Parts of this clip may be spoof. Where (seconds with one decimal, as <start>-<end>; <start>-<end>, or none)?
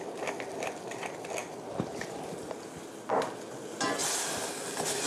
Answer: 4.0-4.5